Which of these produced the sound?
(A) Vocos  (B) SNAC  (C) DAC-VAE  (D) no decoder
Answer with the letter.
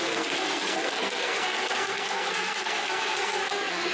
B